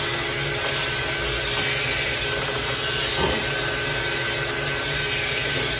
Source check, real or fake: real